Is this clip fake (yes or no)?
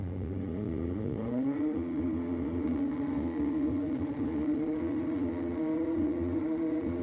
yes